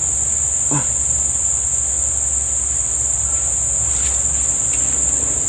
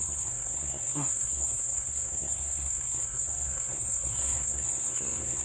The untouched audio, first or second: first